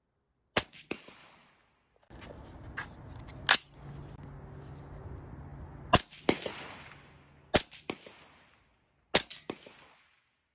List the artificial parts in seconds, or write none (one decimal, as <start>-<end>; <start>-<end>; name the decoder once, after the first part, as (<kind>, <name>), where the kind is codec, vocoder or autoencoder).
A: none